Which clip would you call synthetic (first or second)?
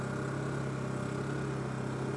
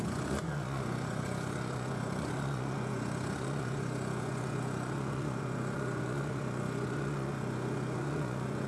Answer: second